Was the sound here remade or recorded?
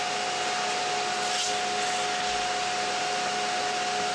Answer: recorded